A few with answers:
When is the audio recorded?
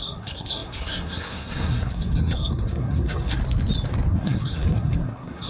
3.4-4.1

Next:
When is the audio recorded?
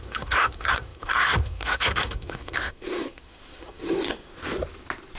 4.4-5.2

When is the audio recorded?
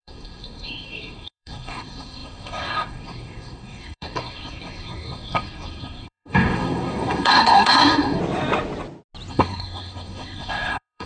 8.2-9.3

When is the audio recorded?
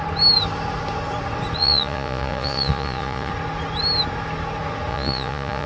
0.0-1.6; 3.3-4.9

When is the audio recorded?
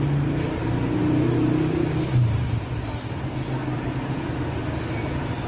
0.0-5.5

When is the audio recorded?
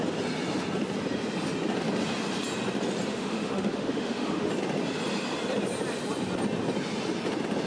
0.0-3.1; 4.5-7.7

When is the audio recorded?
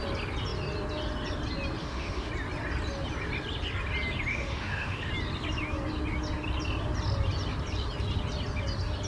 0.0-1.8; 2.3-4.3; 5.1-9.1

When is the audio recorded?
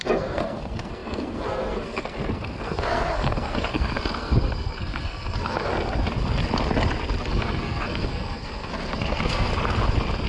5.7-7.2; 9.5-10.3